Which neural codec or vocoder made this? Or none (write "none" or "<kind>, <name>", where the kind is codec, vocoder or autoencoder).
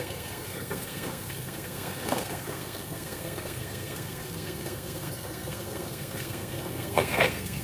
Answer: codec, SNAC